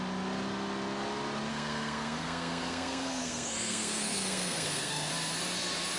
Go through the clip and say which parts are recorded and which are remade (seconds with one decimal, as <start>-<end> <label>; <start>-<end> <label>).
0.0-1.5 recorded; 1.5-5.1 remade; 5.1-6.0 recorded